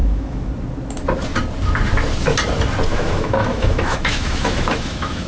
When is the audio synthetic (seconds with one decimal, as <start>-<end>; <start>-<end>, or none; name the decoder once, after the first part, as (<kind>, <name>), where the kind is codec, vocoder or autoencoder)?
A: 0.0-0.5 (autoencoder, DAC-VAE); 2.9-5.3